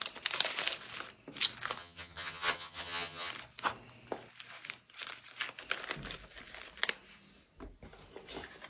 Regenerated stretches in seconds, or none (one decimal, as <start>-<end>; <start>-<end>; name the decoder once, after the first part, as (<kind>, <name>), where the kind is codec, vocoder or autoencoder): 1.8-3.3 (vocoder, HiFi-GAN)